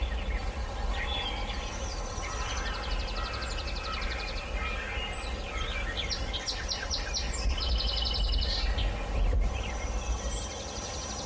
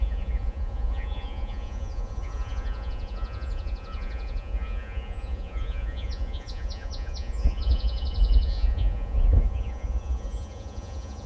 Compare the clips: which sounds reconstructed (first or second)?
second